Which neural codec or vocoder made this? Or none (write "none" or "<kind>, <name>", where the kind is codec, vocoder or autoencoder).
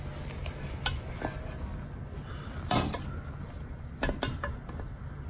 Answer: none